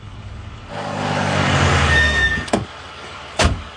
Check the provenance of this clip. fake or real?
fake